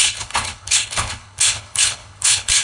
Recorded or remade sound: remade